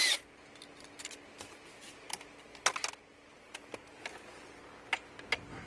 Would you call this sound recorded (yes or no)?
yes